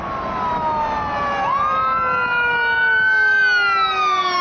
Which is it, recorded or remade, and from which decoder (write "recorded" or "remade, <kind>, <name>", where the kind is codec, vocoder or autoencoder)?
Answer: recorded